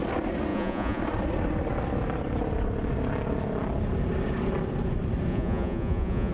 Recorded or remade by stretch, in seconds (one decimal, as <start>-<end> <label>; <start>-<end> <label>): 0.0-0.5 recorded; 0.5-1.0 remade; 1.0-5.3 recorded; 5.3-6.3 remade